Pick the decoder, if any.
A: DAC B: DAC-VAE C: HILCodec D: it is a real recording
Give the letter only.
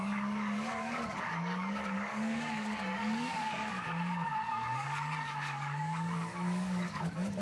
A